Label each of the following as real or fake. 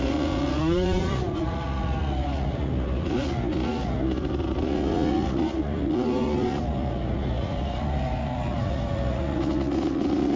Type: fake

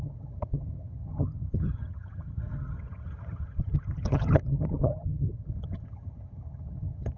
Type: fake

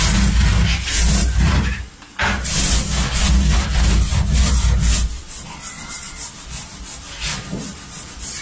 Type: real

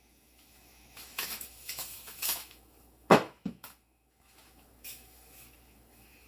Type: fake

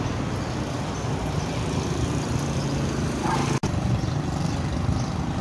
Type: real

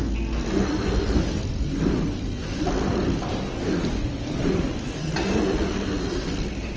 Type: real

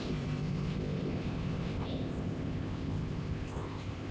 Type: fake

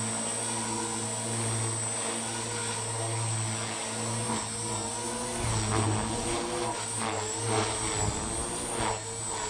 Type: real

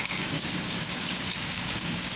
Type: fake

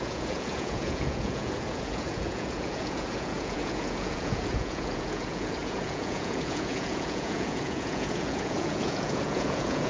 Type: fake